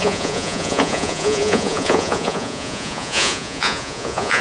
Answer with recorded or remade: remade